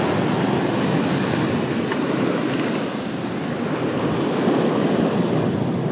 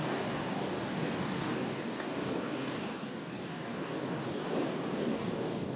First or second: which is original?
first